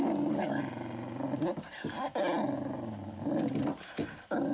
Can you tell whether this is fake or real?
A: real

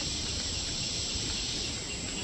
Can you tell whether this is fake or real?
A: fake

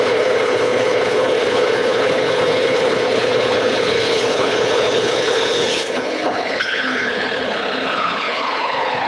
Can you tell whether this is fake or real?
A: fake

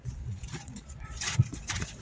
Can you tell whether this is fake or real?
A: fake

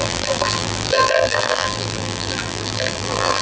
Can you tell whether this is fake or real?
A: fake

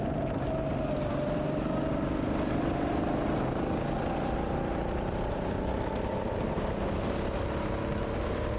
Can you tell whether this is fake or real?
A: real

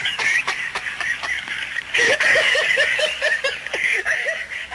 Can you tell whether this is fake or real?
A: fake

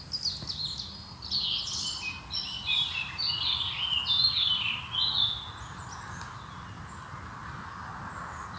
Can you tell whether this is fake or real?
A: real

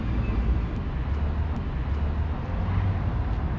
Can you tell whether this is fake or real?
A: real